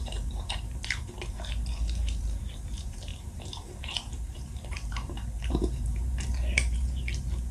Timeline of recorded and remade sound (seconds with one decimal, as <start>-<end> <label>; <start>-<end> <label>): 0.0-7.5 remade